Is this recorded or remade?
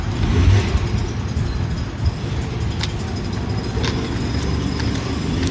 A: recorded